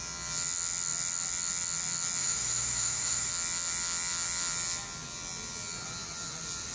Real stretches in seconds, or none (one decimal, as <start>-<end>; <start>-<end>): 0.0-2.2; 3.3-6.7